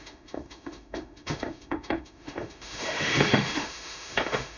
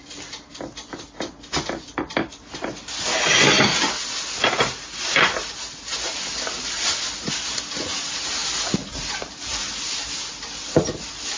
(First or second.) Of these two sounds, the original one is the second